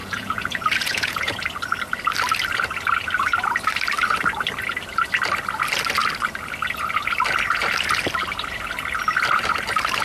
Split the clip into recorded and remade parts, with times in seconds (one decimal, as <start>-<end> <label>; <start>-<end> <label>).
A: 0.0-1.4 remade; 1.4-10.0 recorded